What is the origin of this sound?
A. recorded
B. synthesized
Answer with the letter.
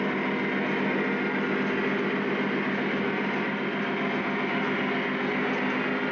A